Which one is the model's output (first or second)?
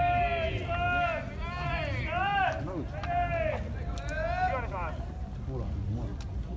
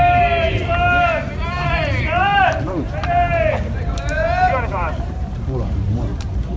second